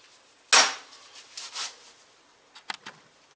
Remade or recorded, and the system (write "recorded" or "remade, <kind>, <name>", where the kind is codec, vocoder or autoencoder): recorded